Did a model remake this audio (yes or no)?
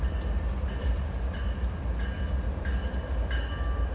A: no